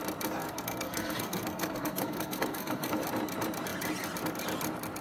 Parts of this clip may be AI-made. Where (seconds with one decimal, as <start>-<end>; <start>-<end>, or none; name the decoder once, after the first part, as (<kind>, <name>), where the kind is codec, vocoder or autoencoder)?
0.4-3.0 (codec, SNAC)